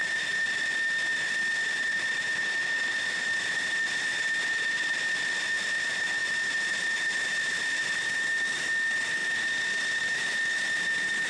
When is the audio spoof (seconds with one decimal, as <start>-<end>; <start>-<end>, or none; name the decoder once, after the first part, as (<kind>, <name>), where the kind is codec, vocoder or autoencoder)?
none